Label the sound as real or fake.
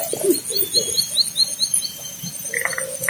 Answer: real